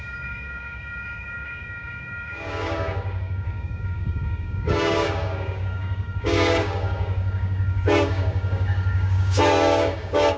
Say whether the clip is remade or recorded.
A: remade